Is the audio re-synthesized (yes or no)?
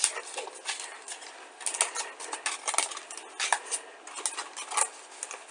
no